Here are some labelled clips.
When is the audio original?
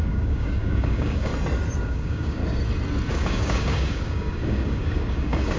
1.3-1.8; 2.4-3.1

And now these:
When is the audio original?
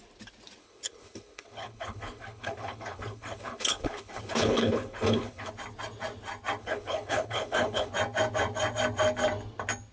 0.0-0.6; 5.5-6.6; 7.9-9.9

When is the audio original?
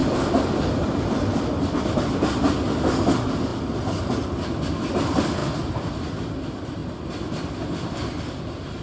0.5-5.4; 5.9-6.8; 8.2-8.8